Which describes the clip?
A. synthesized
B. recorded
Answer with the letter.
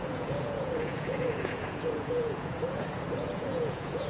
A